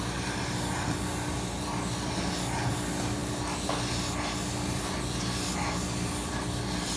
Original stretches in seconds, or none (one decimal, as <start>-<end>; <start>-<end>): 0.0-7.0